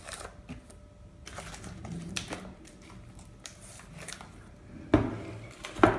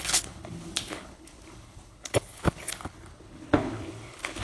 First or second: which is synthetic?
second